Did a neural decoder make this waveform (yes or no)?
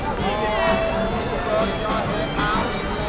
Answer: no